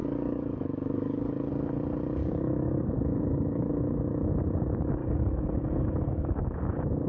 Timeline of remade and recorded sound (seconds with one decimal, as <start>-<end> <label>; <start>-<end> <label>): 0.0-1.5 remade; 1.5-2.2 recorded; 2.2-3.7 remade; 3.7-5.0 recorded; 5.0-6.4 remade; 6.4-7.1 recorded